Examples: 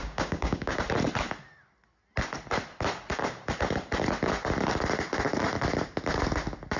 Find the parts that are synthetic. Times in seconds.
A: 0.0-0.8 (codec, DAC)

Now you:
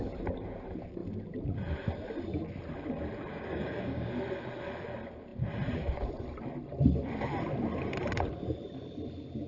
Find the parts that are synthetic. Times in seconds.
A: 3.3-4.1 (codec, DAC)

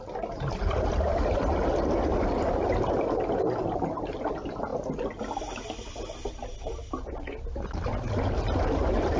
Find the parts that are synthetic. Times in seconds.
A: none

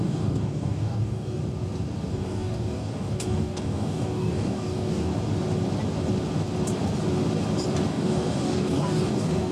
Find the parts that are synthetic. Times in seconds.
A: 0.0-1.4 (codec, DAC); 2.1-5.1; 7.9-9.5

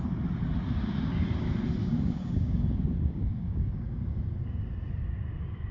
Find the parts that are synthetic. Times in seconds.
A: 1.8-4.2 (codec, DAC)

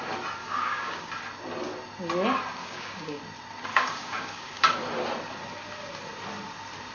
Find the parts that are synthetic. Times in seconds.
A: 0.4-1.1 (codec, DAC); 2.6-3.2; 3.7-4.6